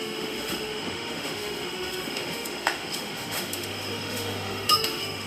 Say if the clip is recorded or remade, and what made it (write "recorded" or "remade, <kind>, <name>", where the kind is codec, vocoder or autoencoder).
remade, autoencoder, DAC-VAE